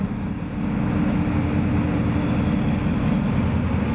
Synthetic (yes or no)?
no